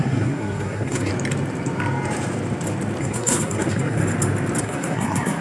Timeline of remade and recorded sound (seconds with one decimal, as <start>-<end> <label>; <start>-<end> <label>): 0.0-1.1 remade; 1.1-3.0 recorded; 3.0-4.0 remade; 4.0-4.6 recorded; 4.6-5.4 remade